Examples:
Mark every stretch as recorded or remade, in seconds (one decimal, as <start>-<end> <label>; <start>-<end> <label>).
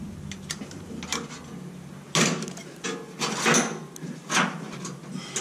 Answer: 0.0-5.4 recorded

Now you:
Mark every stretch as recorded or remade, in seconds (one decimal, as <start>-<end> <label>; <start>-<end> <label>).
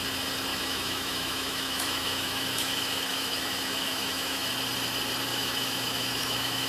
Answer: 0.0-0.5 recorded; 0.5-4.5 remade; 4.5-5.3 recorded; 5.3-6.7 remade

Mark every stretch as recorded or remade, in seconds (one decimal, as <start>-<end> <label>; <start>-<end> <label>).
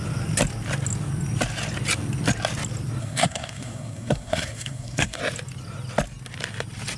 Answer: 0.0-3.0 recorded; 3.0-5.2 remade; 5.2-7.0 recorded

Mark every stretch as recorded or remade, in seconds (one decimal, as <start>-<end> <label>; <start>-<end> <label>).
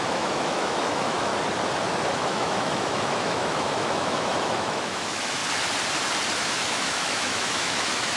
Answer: 0.0-1.3 remade; 1.3-2.1 recorded; 2.1-5.4 remade; 5.4-6.4 recorded; 6.4-8.2 remade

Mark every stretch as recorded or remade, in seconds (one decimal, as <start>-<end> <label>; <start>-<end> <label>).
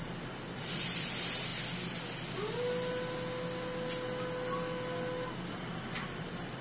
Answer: 0.0-1.5 remade; 1.5-5.5 recorded; 5.5-6.6 remade